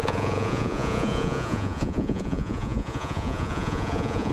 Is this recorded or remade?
remade